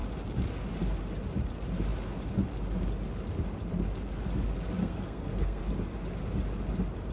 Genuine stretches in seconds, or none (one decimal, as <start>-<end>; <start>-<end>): 0.0-4.8; 5.6-7.1